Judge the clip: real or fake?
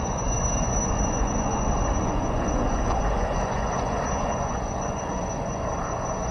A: fake